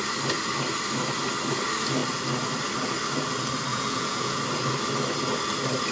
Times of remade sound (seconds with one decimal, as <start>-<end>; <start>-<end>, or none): 3.7-4.4